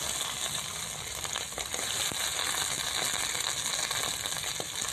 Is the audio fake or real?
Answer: real